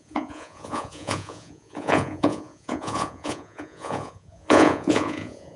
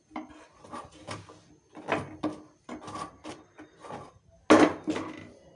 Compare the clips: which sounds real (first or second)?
second